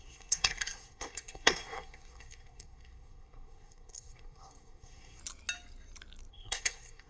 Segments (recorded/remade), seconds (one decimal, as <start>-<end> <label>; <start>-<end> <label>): 0.0-5.2 remade; 5.2-6.3 recorded; 6.3-7.1 remade